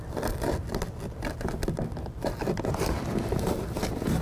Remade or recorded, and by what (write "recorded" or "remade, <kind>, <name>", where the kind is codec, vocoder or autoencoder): remade, vocoder, BigVGAN v2